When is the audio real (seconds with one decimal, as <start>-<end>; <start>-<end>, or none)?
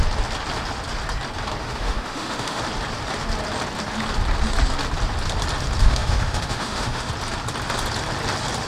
0.0-1.6; 2.6-5.8; 7.1-8.7